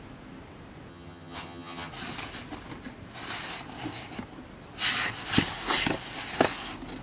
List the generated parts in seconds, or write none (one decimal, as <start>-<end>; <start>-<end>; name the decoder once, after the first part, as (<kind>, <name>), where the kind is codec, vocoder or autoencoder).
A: 0.9-1.9 (vocoder, HiFi-GAN)